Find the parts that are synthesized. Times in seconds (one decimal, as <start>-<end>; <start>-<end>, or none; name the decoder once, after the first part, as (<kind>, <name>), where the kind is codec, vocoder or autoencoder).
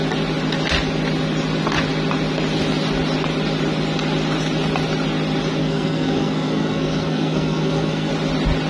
5.6-8.1 (codec, SNAC)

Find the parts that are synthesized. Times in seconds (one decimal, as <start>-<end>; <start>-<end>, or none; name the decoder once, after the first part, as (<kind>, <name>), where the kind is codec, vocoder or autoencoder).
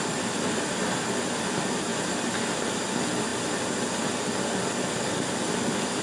none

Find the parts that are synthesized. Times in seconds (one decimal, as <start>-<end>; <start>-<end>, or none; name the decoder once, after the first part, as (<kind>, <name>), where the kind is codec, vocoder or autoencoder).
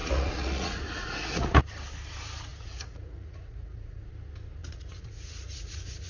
0.0-1.6 (vocoder, Vocos); 2.5-4.1; 4.6-6.1